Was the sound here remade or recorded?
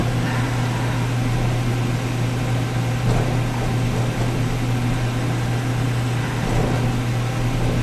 recorded